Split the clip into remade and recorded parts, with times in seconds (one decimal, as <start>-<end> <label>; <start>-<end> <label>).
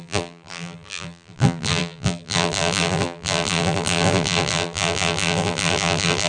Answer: 0.0-6.3 remade